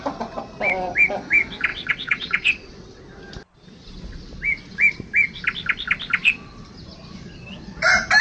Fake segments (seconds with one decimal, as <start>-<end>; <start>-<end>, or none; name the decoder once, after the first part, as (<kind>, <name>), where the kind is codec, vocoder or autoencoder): 1.7-3.0 (vocoder, WaveNeXt)